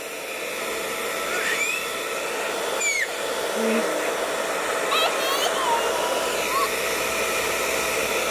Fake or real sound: real